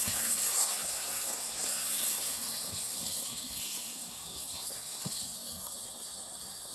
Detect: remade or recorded remade